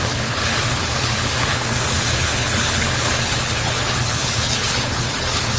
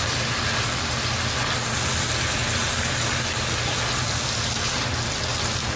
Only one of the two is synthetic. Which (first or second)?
first